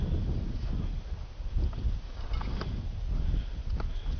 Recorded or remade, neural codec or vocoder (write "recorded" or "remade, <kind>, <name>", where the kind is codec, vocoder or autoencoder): recorded